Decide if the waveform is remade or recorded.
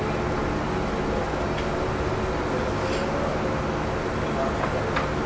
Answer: recorded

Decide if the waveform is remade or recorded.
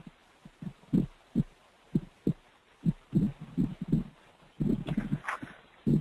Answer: recorded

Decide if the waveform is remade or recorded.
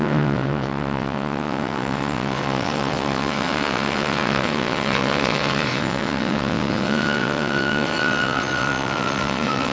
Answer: remade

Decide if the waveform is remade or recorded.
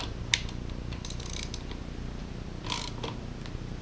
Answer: recorded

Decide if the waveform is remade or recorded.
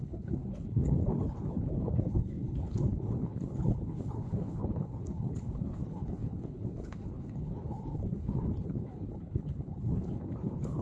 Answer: remade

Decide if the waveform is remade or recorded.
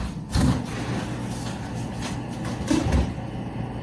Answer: recorded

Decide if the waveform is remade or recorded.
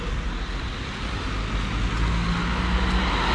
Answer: recorded